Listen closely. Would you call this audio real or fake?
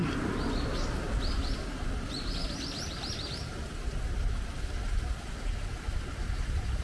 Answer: real